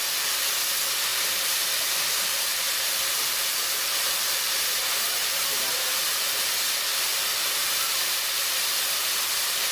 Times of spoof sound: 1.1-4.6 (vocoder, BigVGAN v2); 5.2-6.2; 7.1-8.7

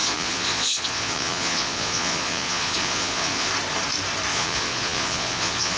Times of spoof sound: 0.0-3.5 (vocoder, Vocos); 4.3-5.8